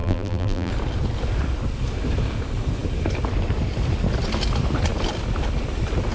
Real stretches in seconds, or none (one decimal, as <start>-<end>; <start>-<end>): 0.7-6.1